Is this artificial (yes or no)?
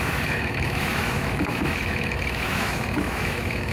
yes